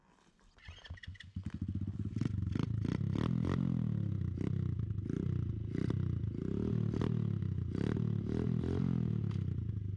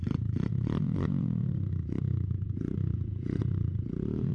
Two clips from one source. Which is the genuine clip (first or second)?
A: first